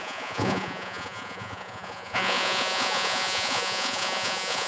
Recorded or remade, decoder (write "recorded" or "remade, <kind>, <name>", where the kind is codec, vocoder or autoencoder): remade, vocoder, Vocos